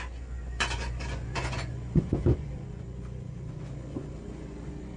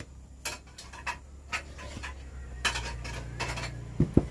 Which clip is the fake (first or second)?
first